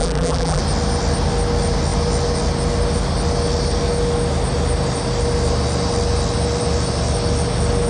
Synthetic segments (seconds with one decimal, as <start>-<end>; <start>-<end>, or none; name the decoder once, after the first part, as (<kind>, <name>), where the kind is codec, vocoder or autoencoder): 0.0-0.6 (vocoder, BigVGAN v2)